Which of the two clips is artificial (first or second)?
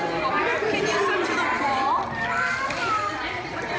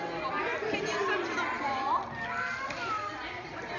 first